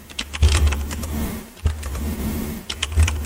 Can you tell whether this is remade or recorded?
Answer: remade